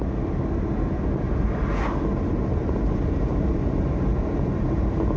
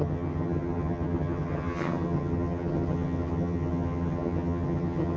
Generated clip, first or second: second